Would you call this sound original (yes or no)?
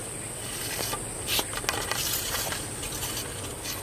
yes